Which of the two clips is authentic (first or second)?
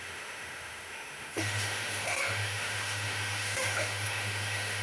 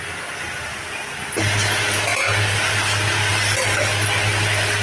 second